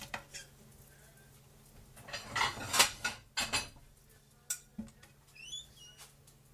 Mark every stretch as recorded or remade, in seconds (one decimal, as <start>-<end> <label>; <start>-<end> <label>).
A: 0.0-6.5 recorded

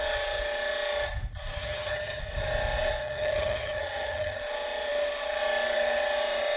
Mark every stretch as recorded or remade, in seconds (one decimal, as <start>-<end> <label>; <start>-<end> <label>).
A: 0.0-1.6 recorded; 1.6-2.2 remade; 2.2-3.0 recorded; 3.0-4.4 remade; 4.4-6.6 recorded

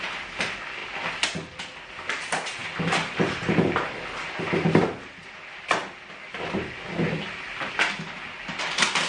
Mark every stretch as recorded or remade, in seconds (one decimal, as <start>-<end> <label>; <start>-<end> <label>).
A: 0.0-9.1 recorded